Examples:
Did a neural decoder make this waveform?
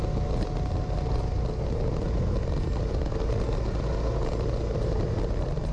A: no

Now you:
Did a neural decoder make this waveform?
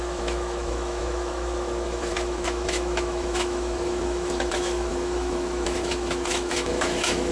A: yes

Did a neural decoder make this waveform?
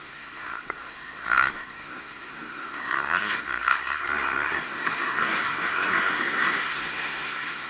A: yes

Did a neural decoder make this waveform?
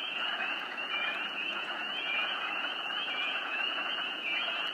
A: yes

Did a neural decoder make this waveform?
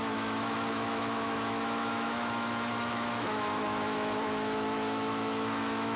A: yes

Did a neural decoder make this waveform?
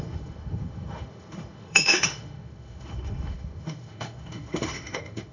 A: yes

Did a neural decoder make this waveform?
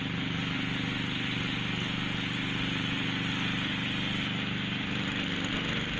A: no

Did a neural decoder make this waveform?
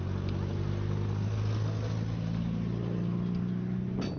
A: no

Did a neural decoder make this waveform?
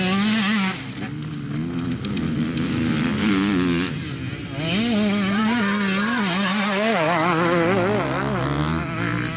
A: no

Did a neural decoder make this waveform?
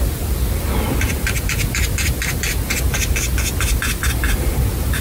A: no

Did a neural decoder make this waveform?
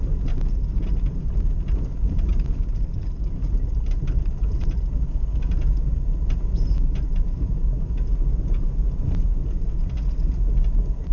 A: no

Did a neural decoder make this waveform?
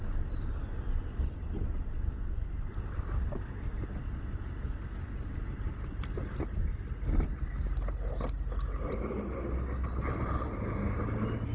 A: no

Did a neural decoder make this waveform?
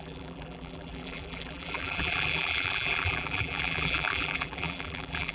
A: yes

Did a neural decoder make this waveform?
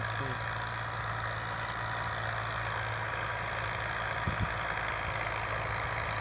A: no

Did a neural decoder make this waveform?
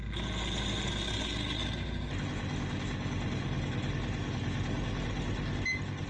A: no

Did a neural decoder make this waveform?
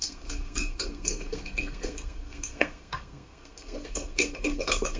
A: yes